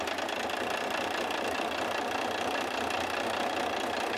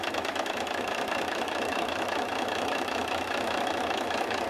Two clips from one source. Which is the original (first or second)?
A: first